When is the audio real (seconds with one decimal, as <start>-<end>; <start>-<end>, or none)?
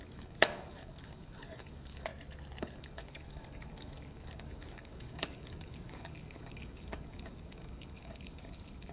2.1-2.6